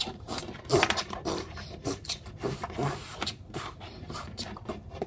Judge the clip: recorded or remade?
remade